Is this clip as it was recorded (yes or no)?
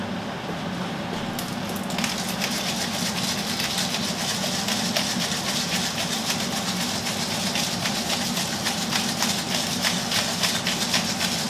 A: yes